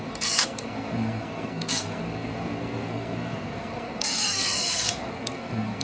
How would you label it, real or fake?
fake